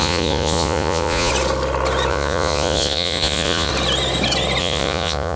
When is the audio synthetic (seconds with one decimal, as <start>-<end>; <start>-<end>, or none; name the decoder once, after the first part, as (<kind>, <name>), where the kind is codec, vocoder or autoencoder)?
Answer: 0.0-1.3 (vocoder, Vocos); 2.1-3.7; 4.6-5.4